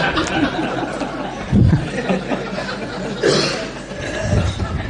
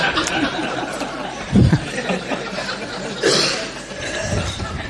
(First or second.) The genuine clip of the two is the first